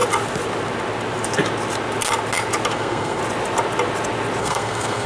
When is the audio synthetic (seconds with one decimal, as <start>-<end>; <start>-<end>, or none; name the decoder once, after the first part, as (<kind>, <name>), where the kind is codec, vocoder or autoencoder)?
2.7-3.2 (codec, SNAC); 4.4-5.1